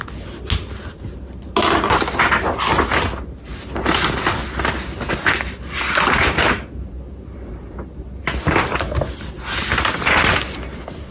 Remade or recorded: recorded